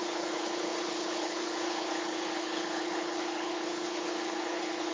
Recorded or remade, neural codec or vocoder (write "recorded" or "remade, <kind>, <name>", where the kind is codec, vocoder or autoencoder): remade, codec, HILCodec